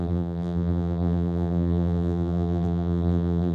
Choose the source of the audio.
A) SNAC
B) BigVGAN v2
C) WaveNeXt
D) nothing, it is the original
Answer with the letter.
B